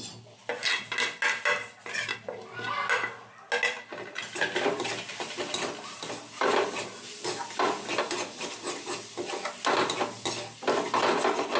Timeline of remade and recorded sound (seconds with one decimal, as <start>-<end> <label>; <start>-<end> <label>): 0.0-11.6 recorded